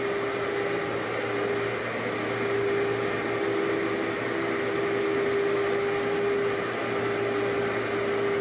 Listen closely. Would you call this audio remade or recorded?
recorded